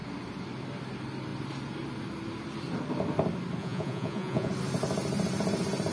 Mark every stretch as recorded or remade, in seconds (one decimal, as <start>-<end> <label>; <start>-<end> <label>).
0.0-3.6 recorded; 3.6-4.5 remade; 4.5-5.9 recorded